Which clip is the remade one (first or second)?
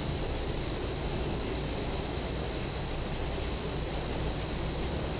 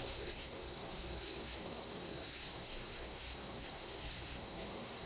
second